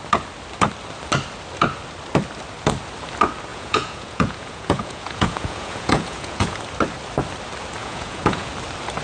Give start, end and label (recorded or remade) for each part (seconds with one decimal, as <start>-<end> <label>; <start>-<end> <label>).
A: 0.0-3.5 recorded; 3.5-6.6 remade; 6.6-7.8 recorded; 7.8-8.5 remade; 8.5-9.0 recorded